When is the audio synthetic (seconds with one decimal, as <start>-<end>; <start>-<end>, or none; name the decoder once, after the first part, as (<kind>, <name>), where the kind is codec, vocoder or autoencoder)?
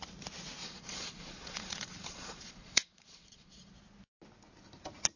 0.6-3.7 (vocoder, Vocos)